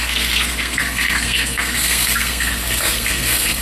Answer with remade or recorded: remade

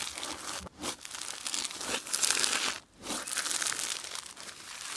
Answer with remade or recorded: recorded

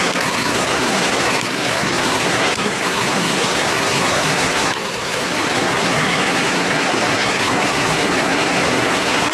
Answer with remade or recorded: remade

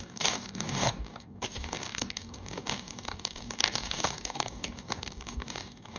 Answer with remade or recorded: remade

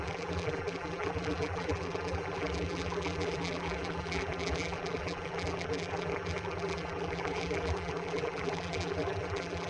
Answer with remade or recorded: remade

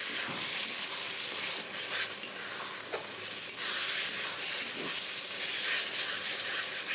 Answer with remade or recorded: recorded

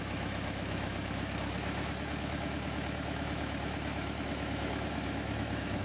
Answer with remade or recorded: remade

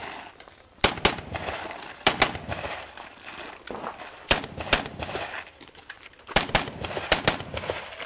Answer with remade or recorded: recorded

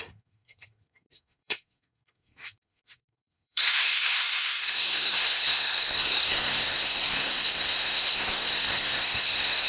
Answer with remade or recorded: remade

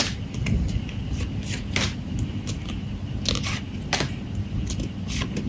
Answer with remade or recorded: recorded